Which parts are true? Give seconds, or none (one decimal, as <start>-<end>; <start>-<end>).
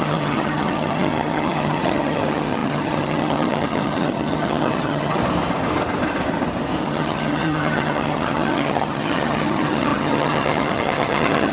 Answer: 5.2-6.8